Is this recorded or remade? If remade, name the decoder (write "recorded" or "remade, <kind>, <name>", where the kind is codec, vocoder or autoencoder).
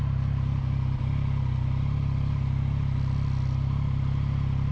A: recorded